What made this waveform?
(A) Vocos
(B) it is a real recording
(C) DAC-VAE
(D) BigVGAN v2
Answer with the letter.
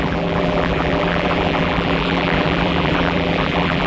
D